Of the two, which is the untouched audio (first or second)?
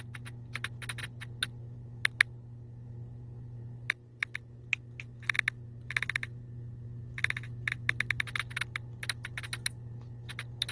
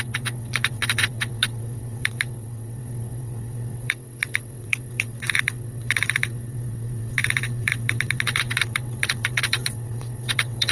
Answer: first